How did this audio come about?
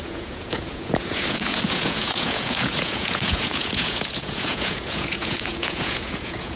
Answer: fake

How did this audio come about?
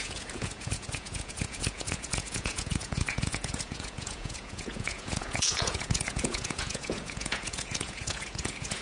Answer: fake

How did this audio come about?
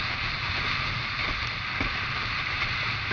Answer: fake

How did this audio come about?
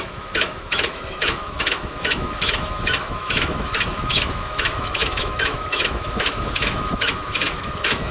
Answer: fake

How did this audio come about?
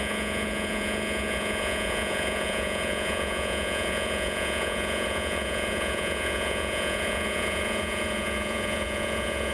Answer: fake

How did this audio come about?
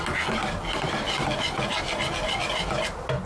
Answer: real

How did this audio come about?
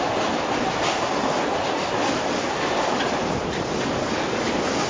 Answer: real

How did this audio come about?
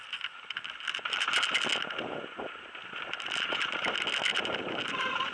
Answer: real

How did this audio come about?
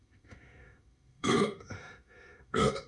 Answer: fake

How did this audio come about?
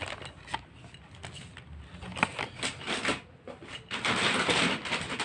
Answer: real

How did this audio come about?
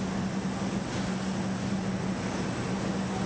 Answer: real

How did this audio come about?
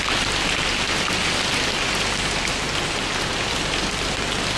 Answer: real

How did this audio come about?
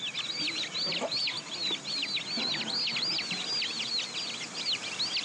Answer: real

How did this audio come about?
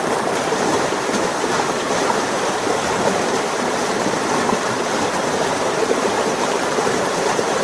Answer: fake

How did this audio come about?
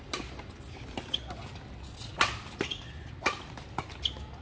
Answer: real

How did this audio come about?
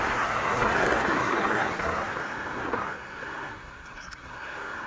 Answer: fake